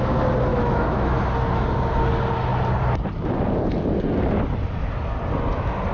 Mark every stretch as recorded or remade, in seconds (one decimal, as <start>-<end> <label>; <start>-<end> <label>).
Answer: 0.0-0.5 recorded; 0.5-1.2 remade; 1.2-5.9 recorded